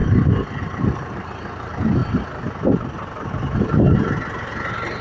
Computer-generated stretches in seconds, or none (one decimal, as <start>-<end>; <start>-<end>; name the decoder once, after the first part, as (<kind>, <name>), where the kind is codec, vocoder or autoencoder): 0.6-2.0 (vocoder, BigVGAN v2)